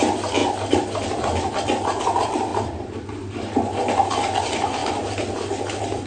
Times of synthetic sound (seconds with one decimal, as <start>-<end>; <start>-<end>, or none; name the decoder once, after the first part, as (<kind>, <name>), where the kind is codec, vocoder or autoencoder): none